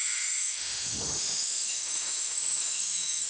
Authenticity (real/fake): fake